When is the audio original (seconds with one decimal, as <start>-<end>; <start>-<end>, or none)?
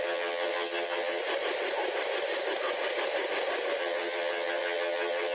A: 1.2-3.8